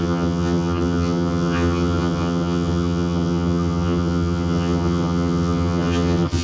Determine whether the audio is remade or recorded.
remade